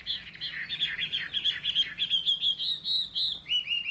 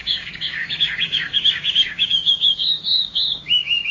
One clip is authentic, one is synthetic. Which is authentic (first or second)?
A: first